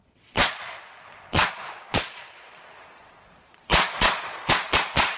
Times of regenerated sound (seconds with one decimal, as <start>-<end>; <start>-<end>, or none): 0.0-5.2